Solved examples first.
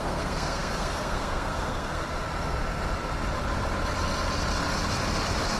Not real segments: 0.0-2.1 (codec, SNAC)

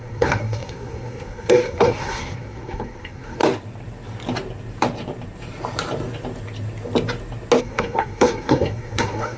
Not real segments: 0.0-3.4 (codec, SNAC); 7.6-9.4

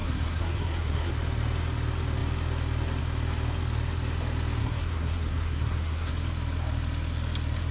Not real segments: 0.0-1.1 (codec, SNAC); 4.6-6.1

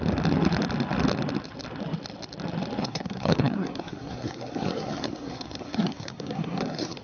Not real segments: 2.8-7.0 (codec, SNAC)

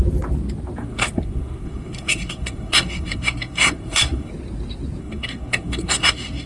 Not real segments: 0.8-4.3 (codec, SNAC); 5.0-6.5

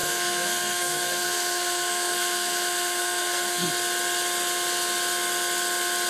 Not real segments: 0.0-3.7 (codec, SNAC)

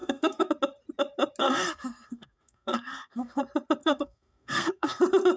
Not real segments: 0.0-0.5 (codec, SNAC); 1.4-3.4; 3.8-5.0

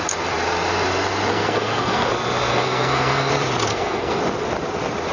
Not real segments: 1.3-2.1 (codec, SNAC); 2.5-3.3; 3.7-4.2